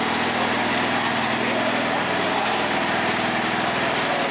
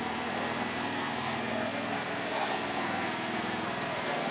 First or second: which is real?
first